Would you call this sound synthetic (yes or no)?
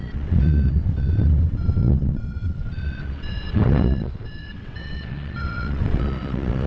yes